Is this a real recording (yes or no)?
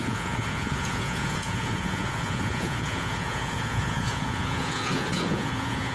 no